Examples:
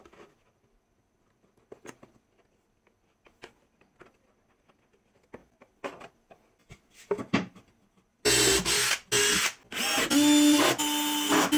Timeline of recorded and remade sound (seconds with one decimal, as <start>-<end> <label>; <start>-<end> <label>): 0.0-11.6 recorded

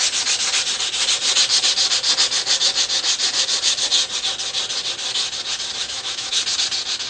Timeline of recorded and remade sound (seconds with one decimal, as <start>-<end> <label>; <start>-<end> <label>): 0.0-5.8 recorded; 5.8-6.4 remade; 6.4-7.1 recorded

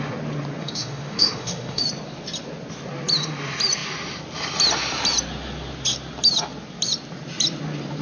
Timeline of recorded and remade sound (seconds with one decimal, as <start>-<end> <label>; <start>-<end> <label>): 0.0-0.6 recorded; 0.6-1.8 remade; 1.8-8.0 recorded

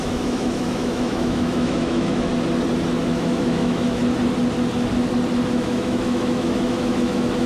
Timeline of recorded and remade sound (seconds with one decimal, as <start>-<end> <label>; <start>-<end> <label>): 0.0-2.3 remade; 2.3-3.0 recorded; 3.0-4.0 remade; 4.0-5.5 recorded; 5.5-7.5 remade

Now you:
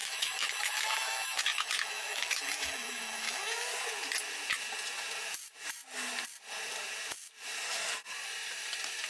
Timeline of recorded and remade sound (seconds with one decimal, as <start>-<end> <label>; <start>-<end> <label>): 0.0-3.7 remade; 3.7-9.1 recorded